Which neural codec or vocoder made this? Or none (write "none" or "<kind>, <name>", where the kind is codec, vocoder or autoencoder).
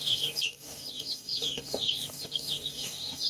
codec, DAC